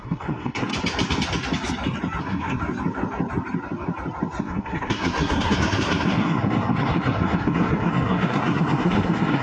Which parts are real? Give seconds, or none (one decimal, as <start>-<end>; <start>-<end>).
0.7-2.2; 2.6-4.4